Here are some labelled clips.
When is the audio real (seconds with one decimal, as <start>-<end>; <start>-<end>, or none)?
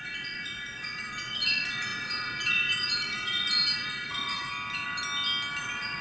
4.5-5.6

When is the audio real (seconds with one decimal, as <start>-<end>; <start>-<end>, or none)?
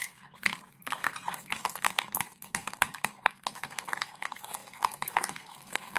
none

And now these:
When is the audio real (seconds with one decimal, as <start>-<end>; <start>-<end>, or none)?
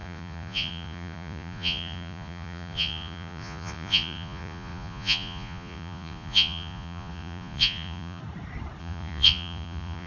8.2-8.8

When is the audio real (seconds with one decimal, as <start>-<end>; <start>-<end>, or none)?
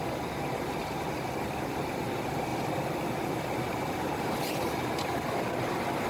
0.0-6.1